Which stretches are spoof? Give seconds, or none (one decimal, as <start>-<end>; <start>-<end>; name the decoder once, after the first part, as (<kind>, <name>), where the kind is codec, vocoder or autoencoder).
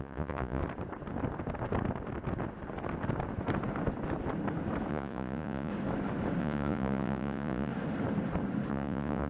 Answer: 0.0-0.6 (vocoder, Vocos); 4.9-5.7; 6.4-7.7; 8.7-9.3